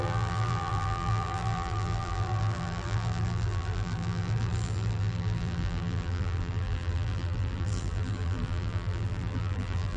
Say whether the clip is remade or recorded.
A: remade